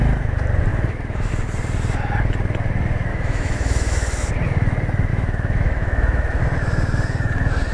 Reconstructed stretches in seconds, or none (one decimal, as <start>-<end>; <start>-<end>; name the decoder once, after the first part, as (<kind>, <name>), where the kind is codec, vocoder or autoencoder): 0.7-1.3 (autoencoder, DAC-VAE); 3.1-4.3; 5.1-6.4